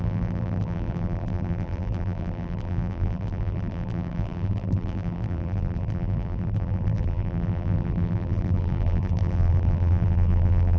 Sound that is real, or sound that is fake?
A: fake